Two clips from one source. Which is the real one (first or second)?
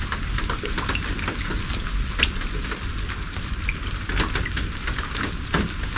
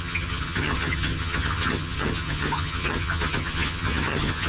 first